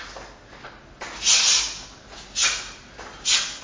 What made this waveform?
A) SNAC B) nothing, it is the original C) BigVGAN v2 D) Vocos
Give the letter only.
B